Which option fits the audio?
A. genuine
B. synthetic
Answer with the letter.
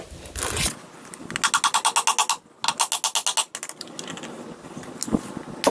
A